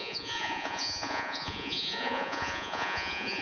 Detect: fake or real fake